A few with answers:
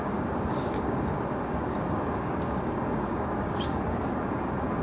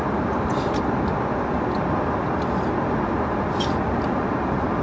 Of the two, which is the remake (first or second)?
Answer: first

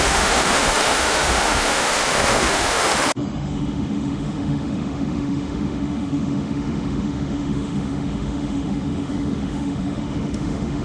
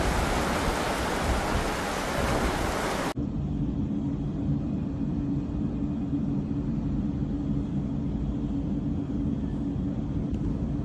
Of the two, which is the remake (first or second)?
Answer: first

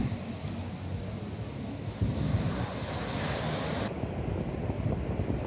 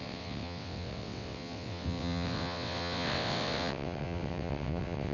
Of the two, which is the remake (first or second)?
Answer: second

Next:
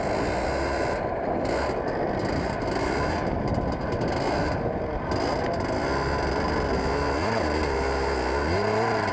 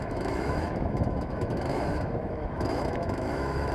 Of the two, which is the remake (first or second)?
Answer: second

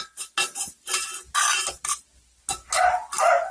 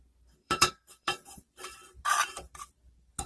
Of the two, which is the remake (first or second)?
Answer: second